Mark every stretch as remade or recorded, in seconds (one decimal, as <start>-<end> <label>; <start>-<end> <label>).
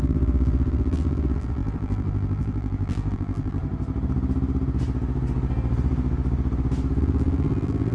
0.0-3.6 remade; 3.6-7.0 recorded; 7.0-7.9 remade